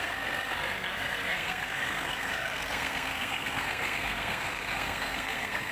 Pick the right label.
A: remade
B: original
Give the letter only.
A